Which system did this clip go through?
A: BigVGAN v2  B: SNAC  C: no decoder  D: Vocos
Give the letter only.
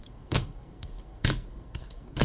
B